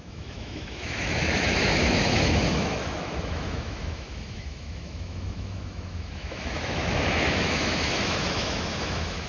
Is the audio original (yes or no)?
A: no